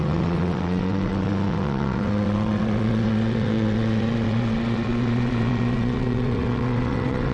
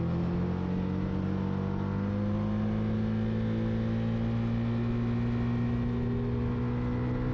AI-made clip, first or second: first